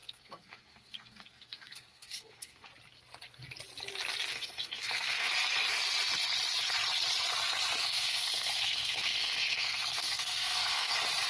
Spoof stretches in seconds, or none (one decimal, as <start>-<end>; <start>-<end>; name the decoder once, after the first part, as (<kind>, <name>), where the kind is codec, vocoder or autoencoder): 0.0-2.7 (codec, SNAC); 4.3-5.3; 7.8-10.9